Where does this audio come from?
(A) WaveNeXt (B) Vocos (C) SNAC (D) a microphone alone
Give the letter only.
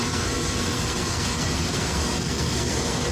C